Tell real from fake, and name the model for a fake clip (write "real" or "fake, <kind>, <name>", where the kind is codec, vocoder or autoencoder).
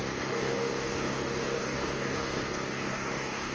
fake, codec, DAC